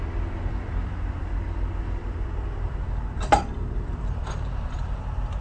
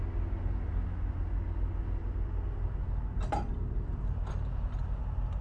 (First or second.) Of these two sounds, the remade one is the first